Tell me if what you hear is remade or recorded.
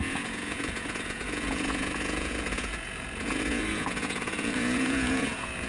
remade